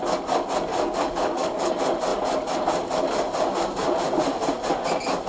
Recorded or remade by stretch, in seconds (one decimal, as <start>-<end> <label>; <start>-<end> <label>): 0.0-0.7 recorded; 0.7-1.7 remade; 1.7-5.3 recorded